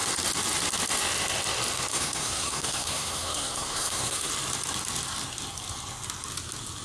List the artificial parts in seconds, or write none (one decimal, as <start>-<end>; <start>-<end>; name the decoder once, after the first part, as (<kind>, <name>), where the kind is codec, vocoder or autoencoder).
1.9-4.3 (codec, SNAC)

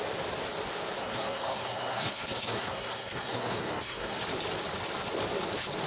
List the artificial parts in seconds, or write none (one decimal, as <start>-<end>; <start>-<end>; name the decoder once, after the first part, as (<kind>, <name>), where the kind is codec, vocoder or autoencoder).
1.0-4.2 (codec, SNAC)

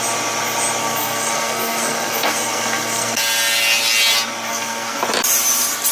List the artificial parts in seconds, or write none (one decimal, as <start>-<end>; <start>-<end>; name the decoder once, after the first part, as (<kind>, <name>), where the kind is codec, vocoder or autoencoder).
0.8-3.2 (codec, SNAC); 4.5-5.0

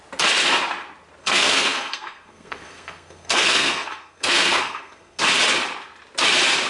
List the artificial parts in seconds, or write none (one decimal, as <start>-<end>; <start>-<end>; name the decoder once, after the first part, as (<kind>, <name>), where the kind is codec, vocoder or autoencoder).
1.2-5.2 (codec, SNAC)

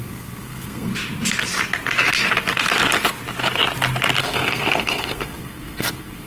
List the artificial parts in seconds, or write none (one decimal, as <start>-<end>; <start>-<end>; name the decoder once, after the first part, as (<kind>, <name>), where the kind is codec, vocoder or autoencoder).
0.0-0.9 (codec, SNAC); 4.2-6.3

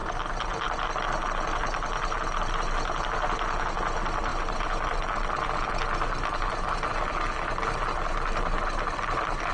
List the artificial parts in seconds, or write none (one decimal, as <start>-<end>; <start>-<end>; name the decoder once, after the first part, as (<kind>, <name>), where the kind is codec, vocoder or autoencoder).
none

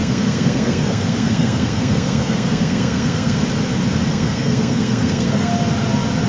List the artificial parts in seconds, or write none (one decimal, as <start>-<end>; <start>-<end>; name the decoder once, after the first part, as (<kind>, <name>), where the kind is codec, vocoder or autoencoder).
0.0-3.4 (codec, SNAC); 4.1-5.5